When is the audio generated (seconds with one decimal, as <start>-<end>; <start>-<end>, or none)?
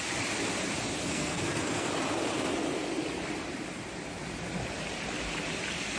1.1-1.9